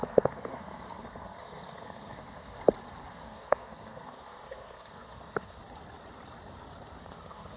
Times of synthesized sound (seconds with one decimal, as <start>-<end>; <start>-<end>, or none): 0.0-2.6; 3.1-5.6; 7.0-7.6